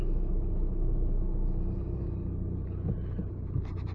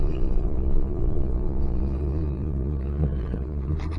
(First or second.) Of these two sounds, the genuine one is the first